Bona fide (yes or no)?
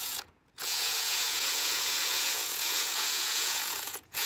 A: no